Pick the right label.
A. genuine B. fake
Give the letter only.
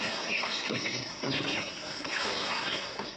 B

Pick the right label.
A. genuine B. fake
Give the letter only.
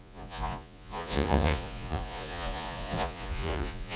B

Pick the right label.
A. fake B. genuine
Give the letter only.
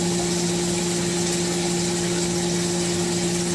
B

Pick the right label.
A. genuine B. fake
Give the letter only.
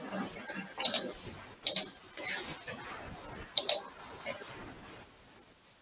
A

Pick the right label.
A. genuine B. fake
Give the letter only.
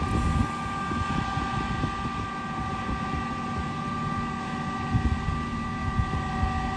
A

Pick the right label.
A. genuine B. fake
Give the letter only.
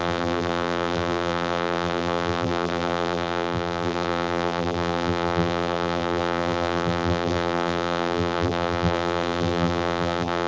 B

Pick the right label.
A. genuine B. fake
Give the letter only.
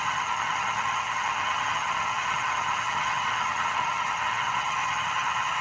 B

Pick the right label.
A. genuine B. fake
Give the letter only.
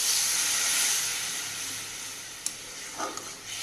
A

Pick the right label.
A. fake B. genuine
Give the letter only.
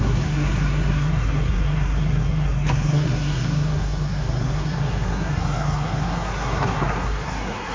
A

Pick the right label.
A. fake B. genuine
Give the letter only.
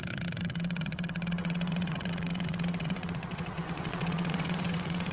A